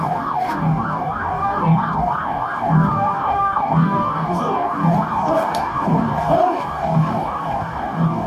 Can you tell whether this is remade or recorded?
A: remade